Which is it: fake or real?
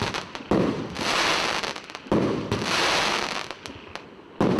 real